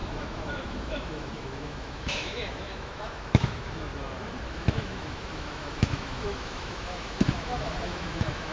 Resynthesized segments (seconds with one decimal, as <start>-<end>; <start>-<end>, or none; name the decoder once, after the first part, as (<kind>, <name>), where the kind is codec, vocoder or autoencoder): 0.0-3.9 (autoencoder, DAC-VAE); 4.4-8.5